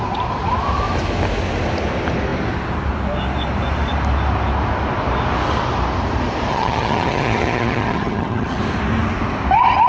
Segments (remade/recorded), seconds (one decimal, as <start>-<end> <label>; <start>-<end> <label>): 0.0-6.5 recorded; 6.5-8.6 remade; 8.6-9.9 recorded